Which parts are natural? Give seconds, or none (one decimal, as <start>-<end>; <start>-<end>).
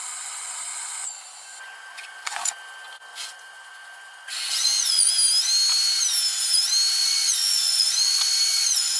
0.0-0.7; 2.5-3.1; 5.1-7.0